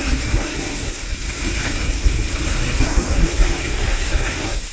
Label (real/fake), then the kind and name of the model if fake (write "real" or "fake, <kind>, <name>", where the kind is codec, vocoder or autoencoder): fake, codec, SNAC